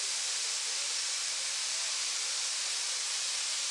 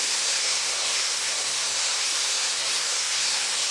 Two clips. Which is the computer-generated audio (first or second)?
second